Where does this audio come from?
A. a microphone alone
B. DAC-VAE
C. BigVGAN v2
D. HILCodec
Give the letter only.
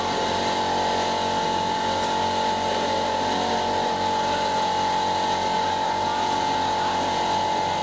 A